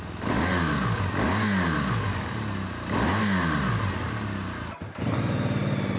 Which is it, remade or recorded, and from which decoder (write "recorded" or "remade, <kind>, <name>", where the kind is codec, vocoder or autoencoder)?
recorded